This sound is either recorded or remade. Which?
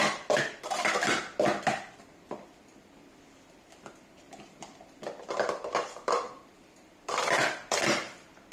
remade